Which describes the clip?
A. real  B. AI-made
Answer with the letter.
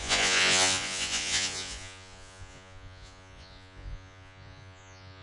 B